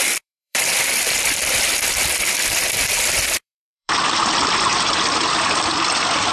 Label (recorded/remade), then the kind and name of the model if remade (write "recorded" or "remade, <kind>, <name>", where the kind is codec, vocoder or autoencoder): remade, vocoder, BigVGAN v2